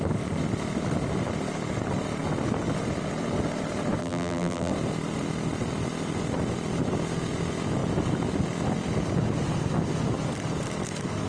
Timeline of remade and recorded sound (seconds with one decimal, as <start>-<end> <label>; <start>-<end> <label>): 0.0-4.0 recorded; 4.0-4.7 remade; 4.7-11.3 recorded